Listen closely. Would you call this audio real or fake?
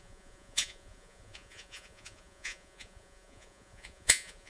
fake